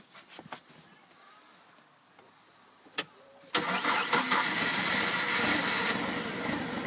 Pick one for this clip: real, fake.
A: real